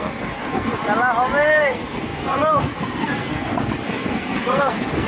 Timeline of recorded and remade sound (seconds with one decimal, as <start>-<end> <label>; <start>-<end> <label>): 0.0-0.8 remade; 0.8-1.4 recorded; 1.4-5.1 remade